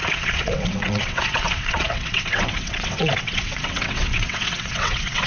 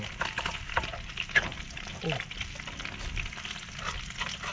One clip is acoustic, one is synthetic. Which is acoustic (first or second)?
second